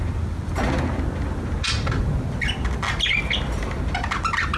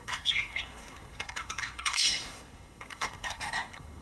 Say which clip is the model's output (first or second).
second